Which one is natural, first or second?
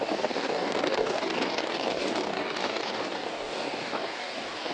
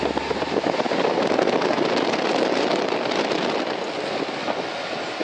second